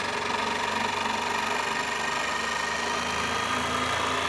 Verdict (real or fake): real